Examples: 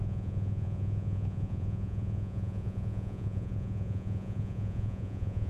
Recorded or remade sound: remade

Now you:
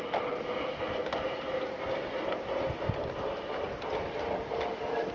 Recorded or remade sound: recorded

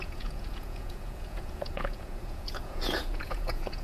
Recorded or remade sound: remade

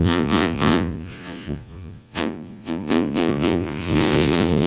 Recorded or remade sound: remade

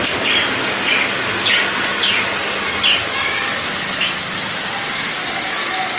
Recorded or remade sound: recorded